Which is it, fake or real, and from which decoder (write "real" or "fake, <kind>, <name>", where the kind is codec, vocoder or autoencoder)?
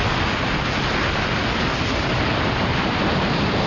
real